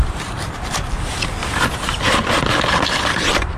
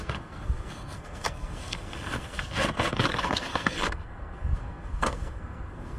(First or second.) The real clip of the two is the first